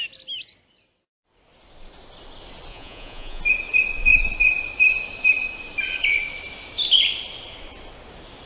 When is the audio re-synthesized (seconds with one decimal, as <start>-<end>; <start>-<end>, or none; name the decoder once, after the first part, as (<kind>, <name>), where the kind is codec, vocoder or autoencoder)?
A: 2.7-3.4 (vocoder, Vocos)